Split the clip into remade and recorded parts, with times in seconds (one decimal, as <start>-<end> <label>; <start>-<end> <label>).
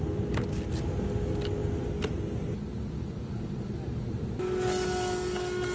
0.0-5.7 recorded